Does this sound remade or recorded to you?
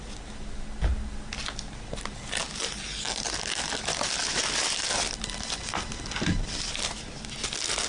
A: recorded